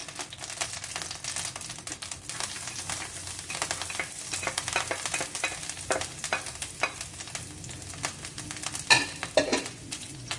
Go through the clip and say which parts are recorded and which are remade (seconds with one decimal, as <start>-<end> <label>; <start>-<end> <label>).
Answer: 0.0-9.5 recorded; 9.5-10.4 remade